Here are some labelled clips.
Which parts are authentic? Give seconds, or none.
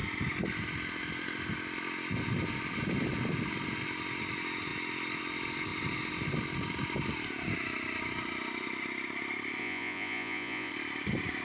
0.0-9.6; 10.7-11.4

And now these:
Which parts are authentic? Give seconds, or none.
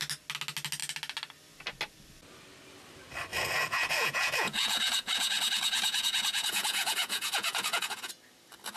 0.0-3.3; 8.1-8.8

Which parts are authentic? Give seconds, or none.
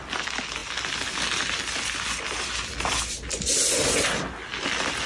0.0-5.1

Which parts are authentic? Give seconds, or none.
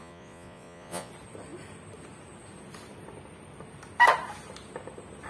1.1-5.3